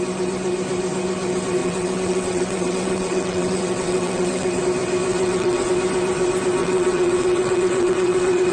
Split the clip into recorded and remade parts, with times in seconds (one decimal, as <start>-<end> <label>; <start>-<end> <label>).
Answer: 0.0-1.6 recorded; 1.6-4.6 remade; 4.6-5.1 recorded; 5.1-5.7 remade; 5.7-6.6 recorded; 6.6-8.5 remade